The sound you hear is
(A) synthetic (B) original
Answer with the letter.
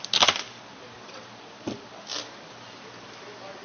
B